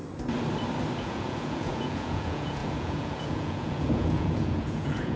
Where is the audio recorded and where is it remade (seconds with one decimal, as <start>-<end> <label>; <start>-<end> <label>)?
0.0-1.0 recorded; 1.0-5.2 remade